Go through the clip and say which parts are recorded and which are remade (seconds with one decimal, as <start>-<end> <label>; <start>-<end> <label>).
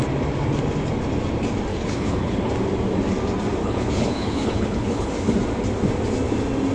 0.0-1.7 recorded; 1.7-2.5 remade; 2.5-3.6 recorded; 3.6-5.1 remade; 5.1-6.7 recorded